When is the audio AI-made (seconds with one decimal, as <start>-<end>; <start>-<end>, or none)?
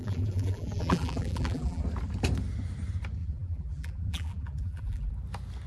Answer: 0.0-1.8; 3.2-5.1